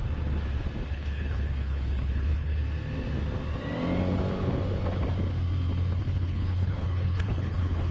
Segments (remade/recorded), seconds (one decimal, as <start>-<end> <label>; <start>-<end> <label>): 0.0-0.9 recorded; 0.9-2.6 remade; 2.6-6.0 recorded; 6.0-7.9 remade